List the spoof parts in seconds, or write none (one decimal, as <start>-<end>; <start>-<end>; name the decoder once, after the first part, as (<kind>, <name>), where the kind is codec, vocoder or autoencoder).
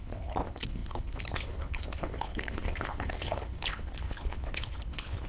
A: 0.0-5.3 (codec, HILCodec)